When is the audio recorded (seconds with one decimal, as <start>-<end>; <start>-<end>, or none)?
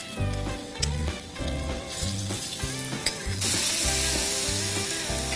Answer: 0.0-0.6; 2.6-3.0; 3.8-5.4